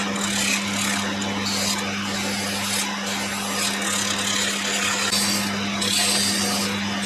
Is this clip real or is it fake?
real